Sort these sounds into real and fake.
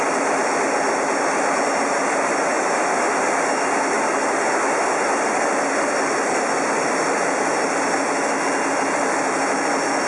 real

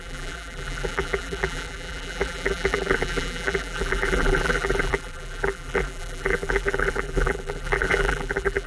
fake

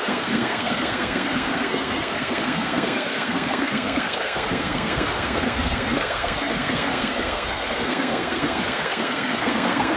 fake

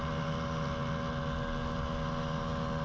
real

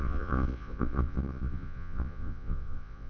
fake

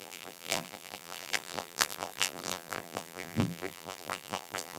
fake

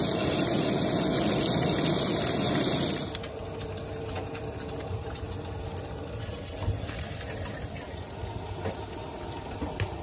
real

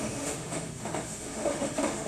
fake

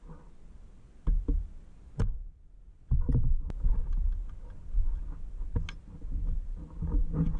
real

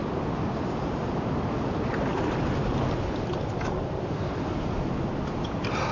real